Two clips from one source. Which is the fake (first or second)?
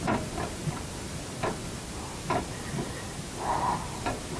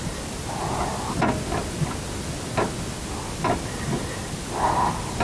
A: first